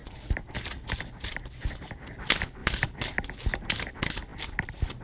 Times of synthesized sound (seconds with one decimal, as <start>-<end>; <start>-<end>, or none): none